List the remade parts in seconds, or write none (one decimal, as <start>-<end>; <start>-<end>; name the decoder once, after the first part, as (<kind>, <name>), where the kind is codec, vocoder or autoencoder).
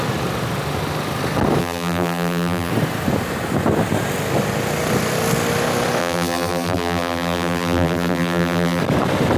1.6-2.7 (vocoder, BigVGAN v2); 6.0-8.8